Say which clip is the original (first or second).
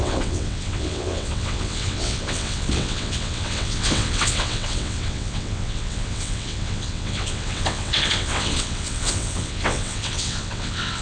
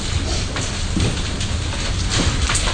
second